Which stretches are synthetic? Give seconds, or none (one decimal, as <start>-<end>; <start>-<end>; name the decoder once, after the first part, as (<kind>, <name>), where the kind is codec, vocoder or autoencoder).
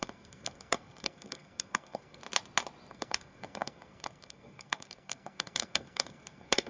0.0-2.2 (codec, SNAC); 2.9-6.7